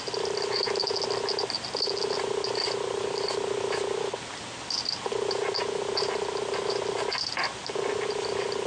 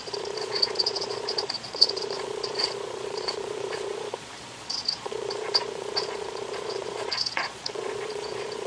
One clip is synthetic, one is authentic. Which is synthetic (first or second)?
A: second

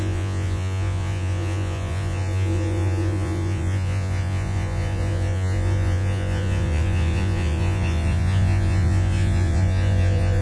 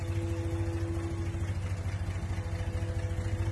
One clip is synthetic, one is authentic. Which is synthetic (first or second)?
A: first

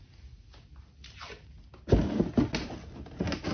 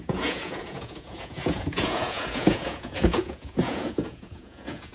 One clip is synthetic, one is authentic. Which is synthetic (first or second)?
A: second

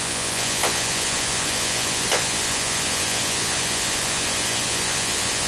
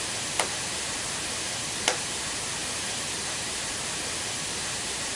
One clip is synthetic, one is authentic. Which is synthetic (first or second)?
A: first